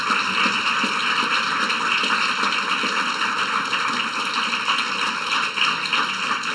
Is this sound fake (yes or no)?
no